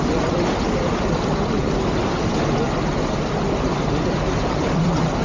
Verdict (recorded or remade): remade